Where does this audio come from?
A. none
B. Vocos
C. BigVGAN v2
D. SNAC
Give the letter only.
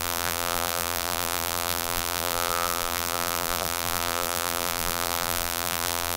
C